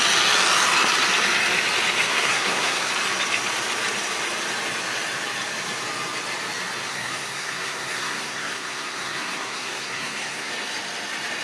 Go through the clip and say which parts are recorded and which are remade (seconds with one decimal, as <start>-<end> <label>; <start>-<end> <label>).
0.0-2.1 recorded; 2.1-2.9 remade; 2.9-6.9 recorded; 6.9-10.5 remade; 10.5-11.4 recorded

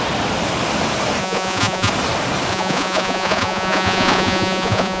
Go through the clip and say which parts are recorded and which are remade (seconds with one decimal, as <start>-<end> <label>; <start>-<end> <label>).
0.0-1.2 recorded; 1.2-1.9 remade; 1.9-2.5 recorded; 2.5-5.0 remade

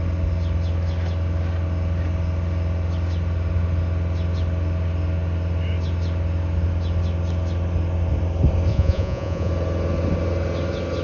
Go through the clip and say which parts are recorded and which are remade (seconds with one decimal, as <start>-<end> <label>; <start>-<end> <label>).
0.0-8.7 recorded; 8.7-9.5 remade; 9.5-11.0 recorded

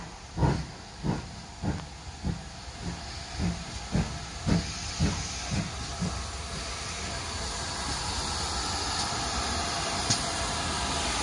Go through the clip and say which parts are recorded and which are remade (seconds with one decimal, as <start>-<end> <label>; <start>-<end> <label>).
0.0-11.2 recorded